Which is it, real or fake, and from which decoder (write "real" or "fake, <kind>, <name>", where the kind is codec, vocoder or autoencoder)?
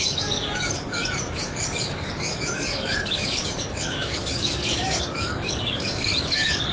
fake, codec, DAC